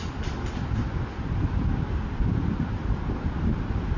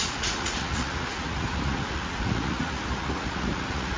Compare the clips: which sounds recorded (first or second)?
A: first